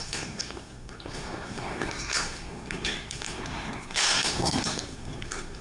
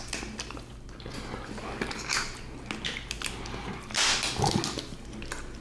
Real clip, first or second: second